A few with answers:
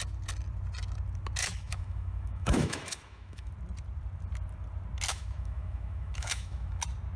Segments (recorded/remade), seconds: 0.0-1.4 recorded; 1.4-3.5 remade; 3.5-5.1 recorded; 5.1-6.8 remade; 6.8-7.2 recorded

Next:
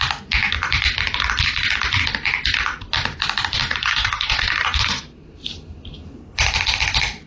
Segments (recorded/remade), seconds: 0.0-3.8 recorded; 3.8-4.4 remade; 4.4-7.3 recorded

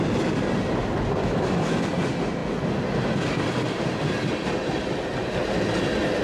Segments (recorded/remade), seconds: 0.0-1.2 recorded; 1.2-1.8 remade; 1.8-6.2 recorded

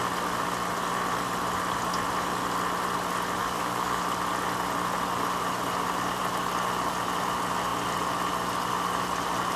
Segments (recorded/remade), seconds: 0.0-3.4 recorded; 3.4-4.0 remade; 4.0-9.6 recorded

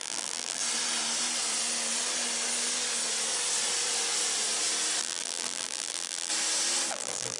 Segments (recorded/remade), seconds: 0.0-0.6 remade; 0.6-5.0 recorded; 5.0-6.3 remade; 6.3-6.9 recorded; 6.9-7.4 remade

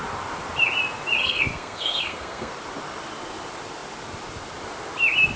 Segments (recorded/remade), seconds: 0.0-1.2 recorded; 1.2-2.5 remade; 2.5-5.4 recorded

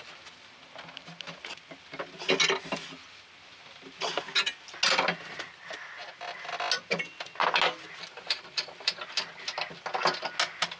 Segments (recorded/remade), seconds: 0.0-10.8 recorded